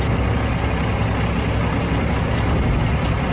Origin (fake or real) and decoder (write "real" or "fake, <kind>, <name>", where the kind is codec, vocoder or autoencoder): real